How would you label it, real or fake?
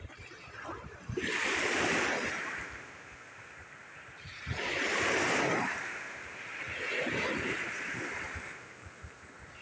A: fake